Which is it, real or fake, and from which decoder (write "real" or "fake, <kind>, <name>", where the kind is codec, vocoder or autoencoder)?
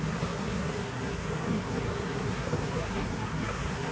fake, codec, SNAC